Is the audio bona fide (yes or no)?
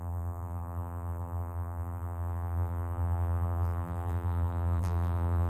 no